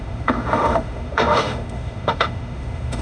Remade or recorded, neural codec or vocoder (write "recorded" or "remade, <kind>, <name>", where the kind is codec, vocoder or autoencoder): remade, autoencoder, DAC-VAE